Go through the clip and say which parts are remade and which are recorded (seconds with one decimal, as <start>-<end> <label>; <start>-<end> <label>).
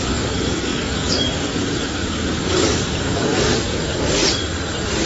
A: 0.0-4.2 remade; 4.2-5.1 recorded